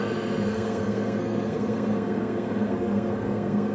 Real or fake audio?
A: fake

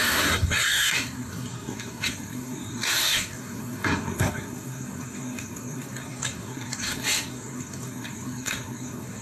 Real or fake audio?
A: fake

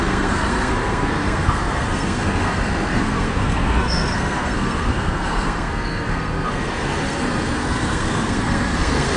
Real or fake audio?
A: fake